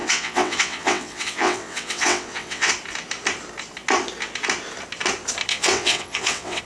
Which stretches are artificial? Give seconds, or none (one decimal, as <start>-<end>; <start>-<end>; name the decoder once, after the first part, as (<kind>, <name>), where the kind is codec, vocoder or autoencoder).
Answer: 0.0-2.7 (vocoder, WaveNeXt); 5.5-6.6